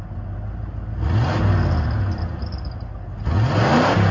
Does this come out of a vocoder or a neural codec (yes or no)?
no